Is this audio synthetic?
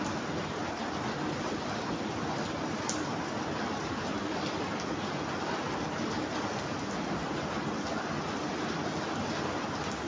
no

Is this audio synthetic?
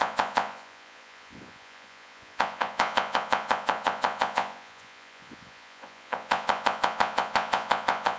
yes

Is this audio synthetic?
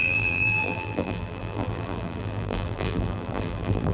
yes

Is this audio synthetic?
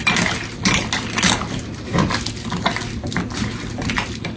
no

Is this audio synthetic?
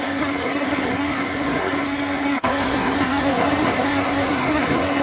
yes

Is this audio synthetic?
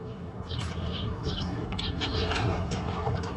yes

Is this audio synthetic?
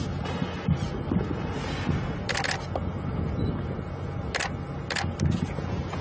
no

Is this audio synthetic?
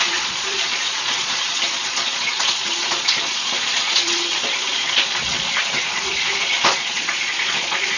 yes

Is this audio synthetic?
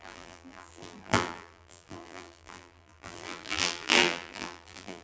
yes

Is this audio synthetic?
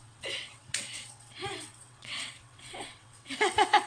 yes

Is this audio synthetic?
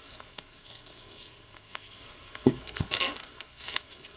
yes